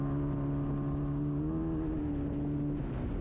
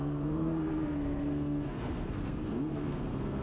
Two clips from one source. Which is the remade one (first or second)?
second